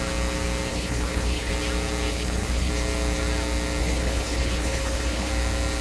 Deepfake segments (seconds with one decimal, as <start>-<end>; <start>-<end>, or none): 0.7-1.5; 2.1-2.7; 3.8-5.3